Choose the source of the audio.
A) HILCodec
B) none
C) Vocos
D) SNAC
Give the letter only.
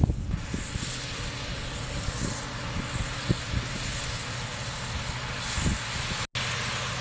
B